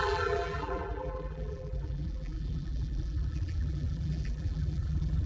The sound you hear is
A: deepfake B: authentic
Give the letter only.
A